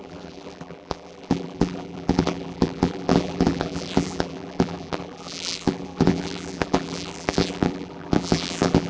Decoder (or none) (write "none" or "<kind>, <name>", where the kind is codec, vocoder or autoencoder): vocoder, BigVGAN v2